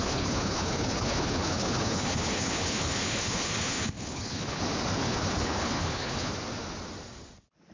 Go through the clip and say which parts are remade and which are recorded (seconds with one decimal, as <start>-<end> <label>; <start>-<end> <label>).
0.0-4.6 remade; 4.6-5.0 recorded; 5.0-6.3 remade; 6.3-7.7 recorded